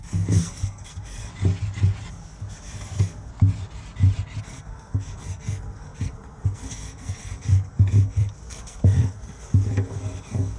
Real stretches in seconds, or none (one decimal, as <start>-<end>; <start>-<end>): 1.3-2.1; 3.3-4.4